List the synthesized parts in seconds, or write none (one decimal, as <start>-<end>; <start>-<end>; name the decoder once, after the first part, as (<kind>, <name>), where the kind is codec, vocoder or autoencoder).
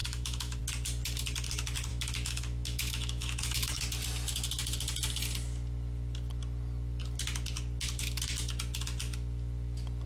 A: 0.0-0.6 (autoencoder, DAC-VAE); 1.9-3.8